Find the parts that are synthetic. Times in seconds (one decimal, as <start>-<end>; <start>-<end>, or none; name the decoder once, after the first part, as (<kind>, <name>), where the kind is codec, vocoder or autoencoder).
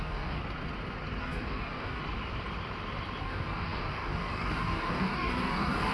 0.0-0.4 (codec, DAC); 1.2-2.0; 3.2-5.9